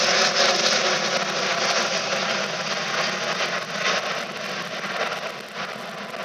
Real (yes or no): yes